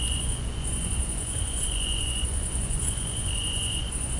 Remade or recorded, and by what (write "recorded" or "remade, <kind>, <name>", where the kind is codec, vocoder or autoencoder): remade, vocoder, Vocos